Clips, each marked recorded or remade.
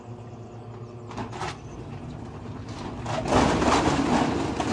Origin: recorded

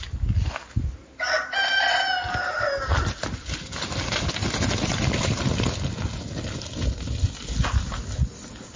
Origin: recorded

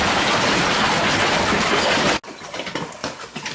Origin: recorded